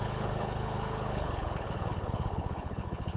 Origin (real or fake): fake